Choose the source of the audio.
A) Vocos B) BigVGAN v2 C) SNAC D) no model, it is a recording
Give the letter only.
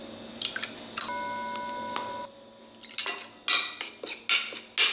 D